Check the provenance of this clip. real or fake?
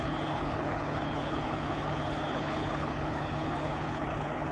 fake